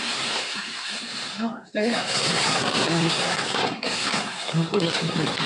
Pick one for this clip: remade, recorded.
remade